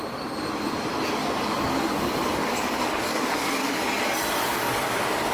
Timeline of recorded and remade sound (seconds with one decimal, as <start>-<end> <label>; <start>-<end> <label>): 0.0-1.2 recorded; 1.2-3.9 remade; 3.9-4.5 recorded; 4.5-5.3 remade